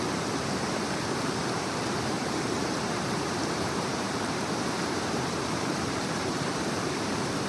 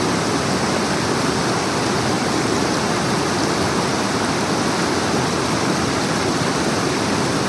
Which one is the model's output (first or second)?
first